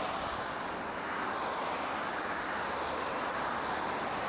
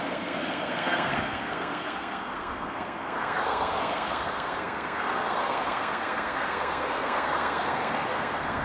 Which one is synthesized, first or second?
second